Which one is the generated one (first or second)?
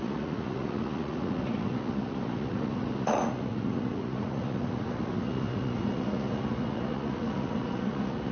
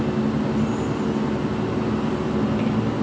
first